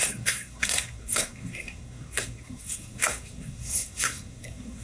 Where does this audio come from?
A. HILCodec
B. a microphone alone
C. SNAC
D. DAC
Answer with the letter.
C